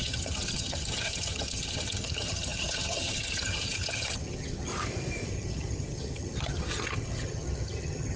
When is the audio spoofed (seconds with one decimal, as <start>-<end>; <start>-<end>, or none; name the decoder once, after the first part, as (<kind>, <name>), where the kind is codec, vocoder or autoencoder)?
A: 0.0-4.7 (vocoder, HiFi-GAN); 5.3-8.2